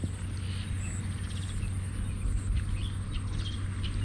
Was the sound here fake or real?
real